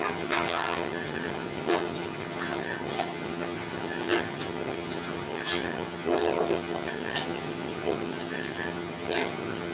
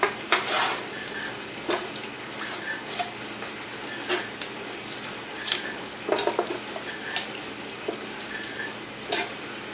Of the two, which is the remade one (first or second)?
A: first